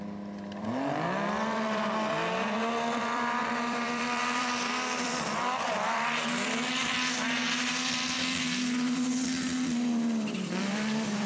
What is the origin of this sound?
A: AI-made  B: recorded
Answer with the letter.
A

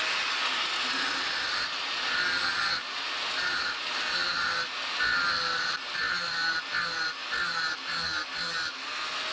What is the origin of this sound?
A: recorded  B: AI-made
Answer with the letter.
A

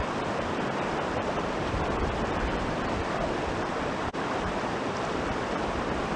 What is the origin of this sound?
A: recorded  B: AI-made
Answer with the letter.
B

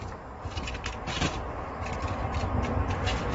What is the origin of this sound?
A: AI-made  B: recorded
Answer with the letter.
A